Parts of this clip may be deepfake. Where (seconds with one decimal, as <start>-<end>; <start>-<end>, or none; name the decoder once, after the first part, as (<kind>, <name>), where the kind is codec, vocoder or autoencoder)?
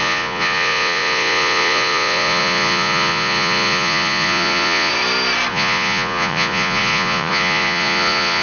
0.0-4.9 (vocoder, Vocos); 5.5-8.4